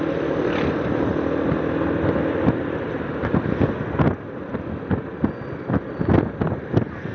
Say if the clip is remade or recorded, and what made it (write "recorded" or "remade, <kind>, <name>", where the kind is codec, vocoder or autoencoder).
recorded